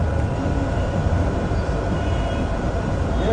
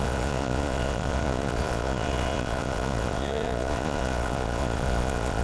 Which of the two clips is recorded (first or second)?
first